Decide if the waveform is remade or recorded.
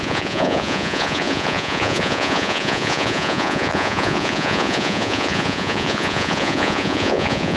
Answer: remade